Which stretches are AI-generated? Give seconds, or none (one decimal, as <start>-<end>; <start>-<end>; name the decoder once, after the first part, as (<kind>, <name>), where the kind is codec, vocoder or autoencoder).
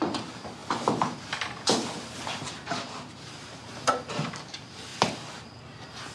0.6-4.3 (vocoder, BigVGAN v2)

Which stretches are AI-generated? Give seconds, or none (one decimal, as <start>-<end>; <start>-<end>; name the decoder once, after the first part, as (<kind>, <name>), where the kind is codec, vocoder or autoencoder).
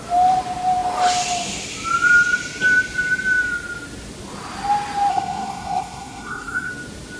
5.1-6.7 (codec, SNAC)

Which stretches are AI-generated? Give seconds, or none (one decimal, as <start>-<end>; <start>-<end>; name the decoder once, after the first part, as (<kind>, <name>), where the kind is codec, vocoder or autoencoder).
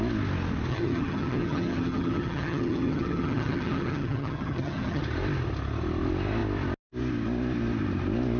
0.7-5.0 (vocoder, HiFi-GAN)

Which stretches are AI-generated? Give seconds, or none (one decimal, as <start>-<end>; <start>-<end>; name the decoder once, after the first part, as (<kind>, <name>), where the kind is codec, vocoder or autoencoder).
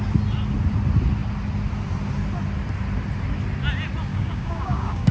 4.1-5.1 (codec, DAC)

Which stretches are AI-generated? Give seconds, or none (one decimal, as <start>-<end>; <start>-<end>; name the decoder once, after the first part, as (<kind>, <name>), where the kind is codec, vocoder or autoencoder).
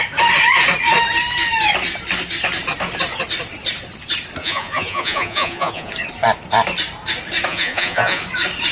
4.4-5.9 (vocoder, Vocos); 7.5-8.2